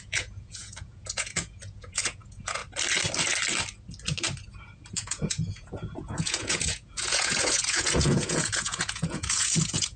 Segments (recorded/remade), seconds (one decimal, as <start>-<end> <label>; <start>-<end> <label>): 0.0-2.6 remade; 2.6-4.9 recorded; 4.9-10.0 remade